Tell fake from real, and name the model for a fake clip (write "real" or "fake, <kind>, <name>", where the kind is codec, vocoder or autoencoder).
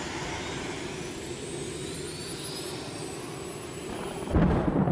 real